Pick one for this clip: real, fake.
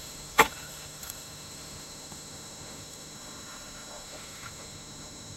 fake